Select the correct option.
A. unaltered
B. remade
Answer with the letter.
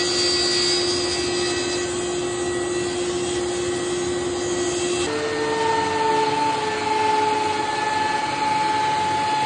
A